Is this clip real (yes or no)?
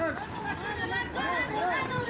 yes